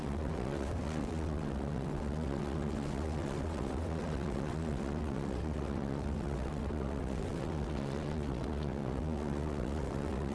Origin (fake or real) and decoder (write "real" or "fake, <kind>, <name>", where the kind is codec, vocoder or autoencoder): fake, vocoder, WaveNeXt